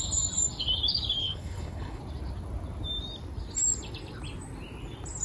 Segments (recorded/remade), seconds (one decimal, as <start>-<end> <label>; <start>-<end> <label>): 0.0-1.2 recorded; 1.2-2.0 remade; 2.0-5.2 recorded